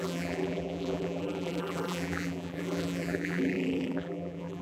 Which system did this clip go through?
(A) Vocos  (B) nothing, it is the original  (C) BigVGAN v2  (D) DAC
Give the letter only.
C